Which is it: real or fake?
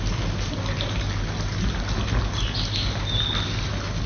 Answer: real